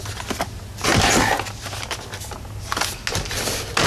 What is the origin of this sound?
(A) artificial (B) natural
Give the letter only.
B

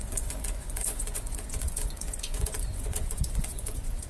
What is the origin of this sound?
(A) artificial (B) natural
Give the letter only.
A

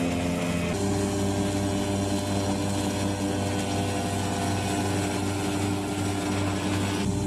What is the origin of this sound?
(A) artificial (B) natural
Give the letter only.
B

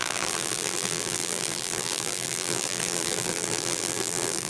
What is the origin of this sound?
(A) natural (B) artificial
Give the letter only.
B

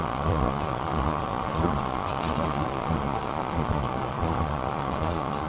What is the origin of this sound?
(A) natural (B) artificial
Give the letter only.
B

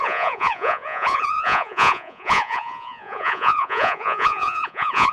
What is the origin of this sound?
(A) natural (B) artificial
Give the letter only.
B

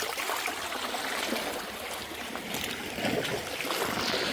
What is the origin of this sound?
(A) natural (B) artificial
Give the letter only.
A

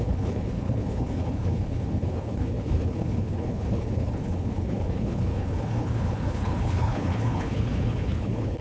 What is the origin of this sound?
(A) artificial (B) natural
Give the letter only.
A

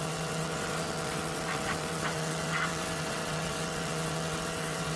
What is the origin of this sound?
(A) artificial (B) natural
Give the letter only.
A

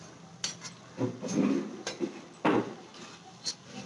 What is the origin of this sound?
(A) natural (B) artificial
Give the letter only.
A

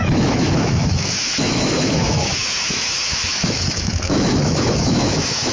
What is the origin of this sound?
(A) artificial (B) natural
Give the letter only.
A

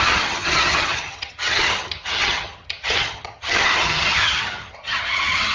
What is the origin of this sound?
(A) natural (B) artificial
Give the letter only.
B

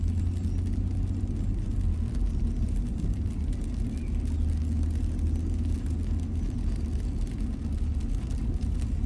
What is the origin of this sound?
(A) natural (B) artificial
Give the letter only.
A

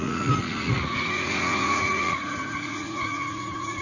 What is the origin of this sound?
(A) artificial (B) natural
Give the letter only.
A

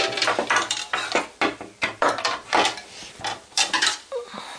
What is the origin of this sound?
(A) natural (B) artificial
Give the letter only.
A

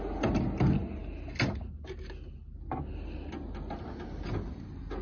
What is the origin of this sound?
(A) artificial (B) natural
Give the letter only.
B